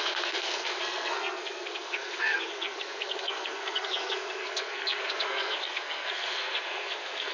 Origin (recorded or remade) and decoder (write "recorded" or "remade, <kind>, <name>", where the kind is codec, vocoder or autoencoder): remade, codec, SNAC